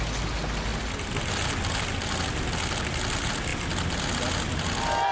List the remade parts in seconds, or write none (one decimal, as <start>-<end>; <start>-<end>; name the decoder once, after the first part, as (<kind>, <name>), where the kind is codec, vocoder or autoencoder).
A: none